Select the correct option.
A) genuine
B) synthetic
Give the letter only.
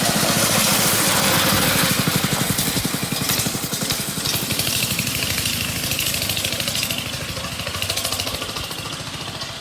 A